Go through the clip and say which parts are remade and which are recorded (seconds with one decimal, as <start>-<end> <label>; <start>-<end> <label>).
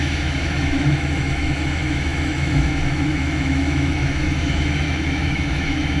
0.0-6.0 remade